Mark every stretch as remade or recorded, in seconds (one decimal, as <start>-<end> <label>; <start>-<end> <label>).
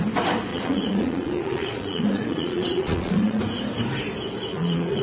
0.0-0.5 recorded; 0.5-3.4 remade; 3.4-4.5 recorded; 4.5-5.0 remade